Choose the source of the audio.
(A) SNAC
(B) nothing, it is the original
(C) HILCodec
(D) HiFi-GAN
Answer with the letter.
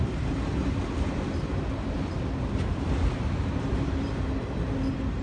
B